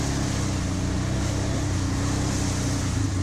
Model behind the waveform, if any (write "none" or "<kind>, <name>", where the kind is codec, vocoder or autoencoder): none